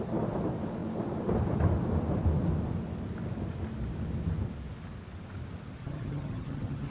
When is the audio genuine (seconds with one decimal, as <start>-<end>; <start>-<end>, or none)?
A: 0.0-5.8